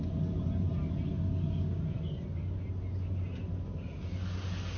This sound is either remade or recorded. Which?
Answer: recorded